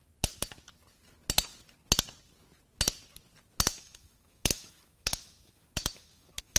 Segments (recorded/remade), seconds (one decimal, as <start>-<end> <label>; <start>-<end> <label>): 0.0-3.7 recorded; 3.7-6.6 remade